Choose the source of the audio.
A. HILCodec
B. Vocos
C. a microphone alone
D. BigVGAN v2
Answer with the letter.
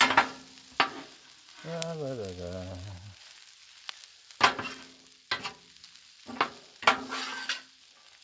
C